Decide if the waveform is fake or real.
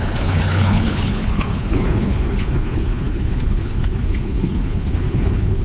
fake